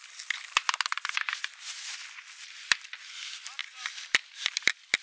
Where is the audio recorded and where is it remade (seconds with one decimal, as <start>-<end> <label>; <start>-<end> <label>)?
0.0-5.0 recorded